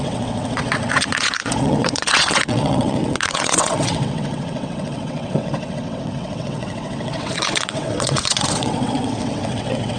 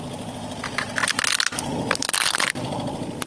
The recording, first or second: second